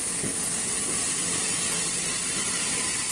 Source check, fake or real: real